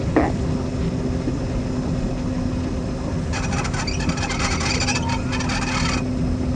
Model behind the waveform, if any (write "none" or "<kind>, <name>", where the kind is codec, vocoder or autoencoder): none